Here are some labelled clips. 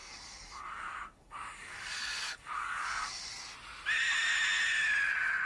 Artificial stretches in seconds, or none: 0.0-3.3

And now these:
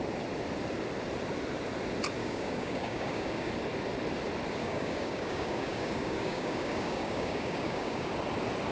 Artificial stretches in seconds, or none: 2.2-3.5; 4.6-8.1

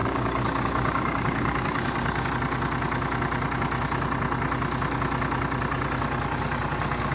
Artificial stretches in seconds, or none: 0.0-2.3